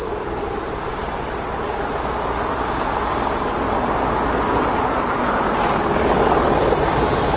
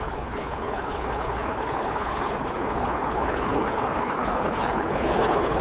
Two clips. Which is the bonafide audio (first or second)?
first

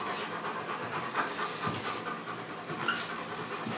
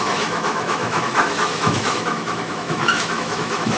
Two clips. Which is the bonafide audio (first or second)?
first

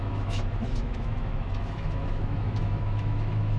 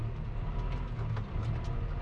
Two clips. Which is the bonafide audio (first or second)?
second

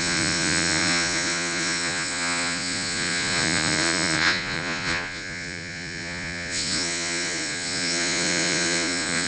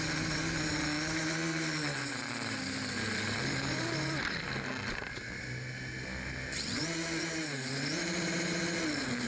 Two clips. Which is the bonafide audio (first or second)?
second